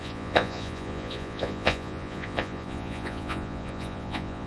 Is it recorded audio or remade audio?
remade